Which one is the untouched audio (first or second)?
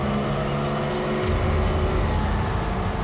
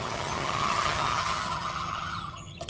first